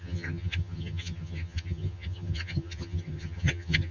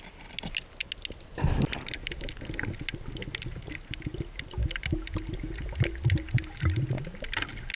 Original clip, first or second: second